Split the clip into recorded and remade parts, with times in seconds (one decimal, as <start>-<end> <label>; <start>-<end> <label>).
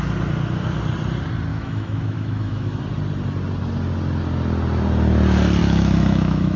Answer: 0.0-1.5 recorded; 1.5-2.8 remade; 2.8-5.6 recorded; 5.6-6.6 remade